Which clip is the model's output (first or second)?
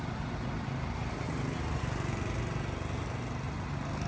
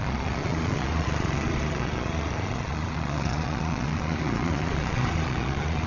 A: second